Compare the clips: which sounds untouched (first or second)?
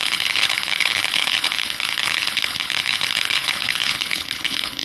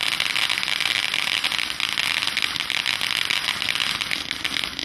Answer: second